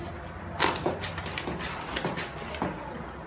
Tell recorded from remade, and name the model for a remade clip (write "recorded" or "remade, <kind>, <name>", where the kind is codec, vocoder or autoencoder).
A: recorded